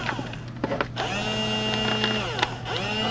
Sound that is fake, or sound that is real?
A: real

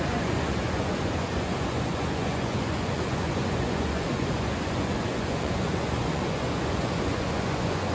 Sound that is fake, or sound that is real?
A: fake